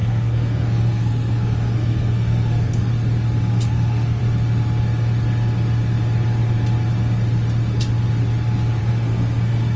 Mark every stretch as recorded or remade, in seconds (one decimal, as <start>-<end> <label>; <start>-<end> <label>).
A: 0.0-2.9 remade; 2.9-3.5 recorded; 3.5-4.2 remade; 4.2-8.8 recorded; 8.8-9.8 remade